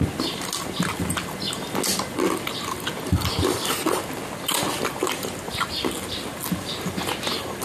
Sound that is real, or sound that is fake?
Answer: real